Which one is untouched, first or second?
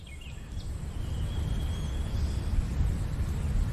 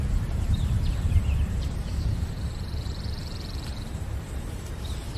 first